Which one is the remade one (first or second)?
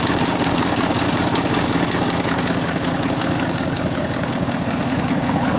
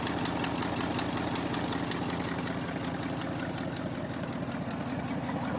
first